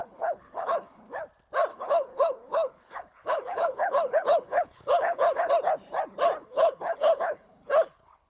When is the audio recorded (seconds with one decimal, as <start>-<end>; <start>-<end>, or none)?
1.0-1.7; 5.5-6.4